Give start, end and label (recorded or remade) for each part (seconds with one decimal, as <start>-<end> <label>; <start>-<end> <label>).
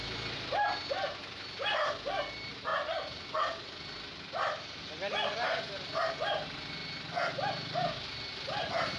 0.0-9.0 recorded